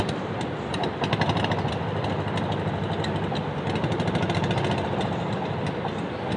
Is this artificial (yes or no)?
no